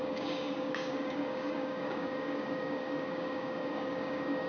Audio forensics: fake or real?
fake